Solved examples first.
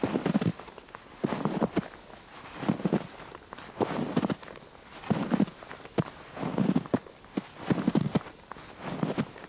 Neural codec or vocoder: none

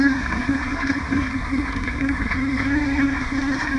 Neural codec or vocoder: codec, SNAC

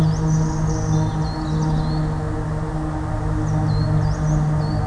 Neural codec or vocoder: none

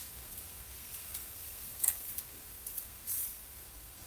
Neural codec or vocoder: codec, SNAC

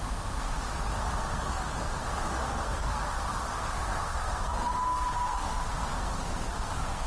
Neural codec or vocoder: codec, SNAC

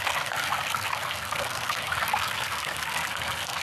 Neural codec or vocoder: codec, SNAC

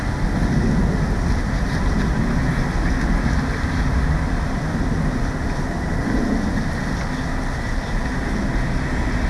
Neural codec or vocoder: none